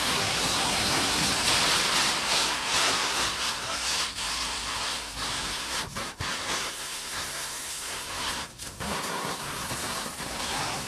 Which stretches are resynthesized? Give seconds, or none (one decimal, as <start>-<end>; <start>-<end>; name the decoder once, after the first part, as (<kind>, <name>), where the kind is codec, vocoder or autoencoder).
0.0-1.3 (codec, SNAC); 2.2-10.9